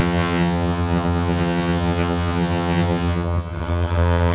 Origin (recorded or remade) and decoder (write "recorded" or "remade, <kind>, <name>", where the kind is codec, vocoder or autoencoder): remade, vocoder, HiFi-GAN